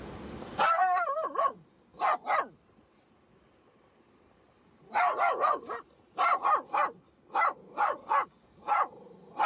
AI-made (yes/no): no